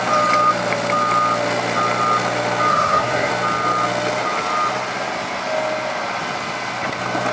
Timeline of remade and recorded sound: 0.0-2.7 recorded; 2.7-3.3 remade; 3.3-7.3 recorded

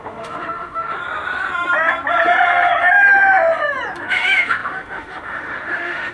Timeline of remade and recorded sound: 0.0-1.0 remade; 1.0-4.0 recorded; 4.0-6.1 remade